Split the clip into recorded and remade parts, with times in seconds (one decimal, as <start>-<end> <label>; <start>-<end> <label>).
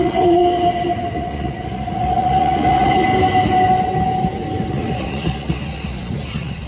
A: 0.0-0.4 remade; 0.4-1.1 recorded; 1.1-3.1 remade; 3.1-4.7 recorded; 4.7-6.7 remade